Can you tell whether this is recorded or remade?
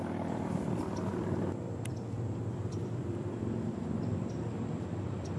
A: remade